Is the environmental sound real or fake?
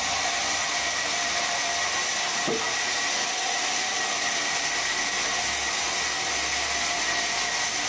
real